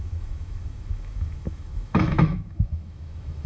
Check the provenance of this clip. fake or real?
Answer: fake